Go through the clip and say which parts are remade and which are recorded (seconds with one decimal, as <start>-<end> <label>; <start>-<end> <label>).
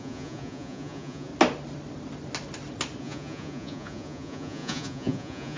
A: 0.0-1.3 remade; 1.3-3.0 recorded; 3.0-5.6 remade